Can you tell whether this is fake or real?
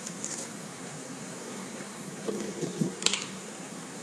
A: fake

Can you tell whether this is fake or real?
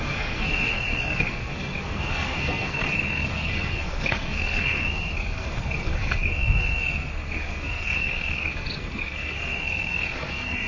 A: fake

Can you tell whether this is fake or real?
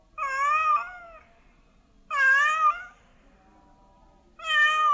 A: real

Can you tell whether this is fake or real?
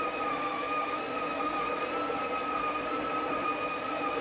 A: real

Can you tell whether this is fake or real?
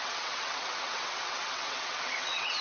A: fake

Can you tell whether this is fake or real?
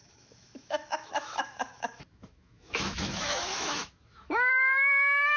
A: fake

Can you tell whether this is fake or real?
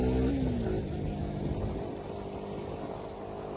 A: real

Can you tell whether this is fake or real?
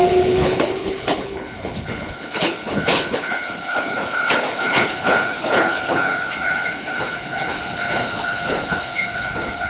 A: fake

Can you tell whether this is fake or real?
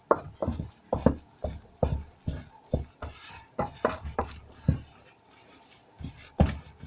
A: real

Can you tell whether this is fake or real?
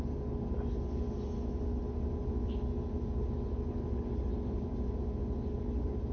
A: real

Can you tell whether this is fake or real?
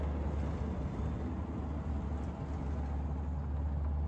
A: real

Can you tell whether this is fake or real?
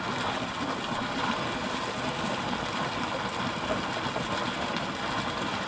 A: real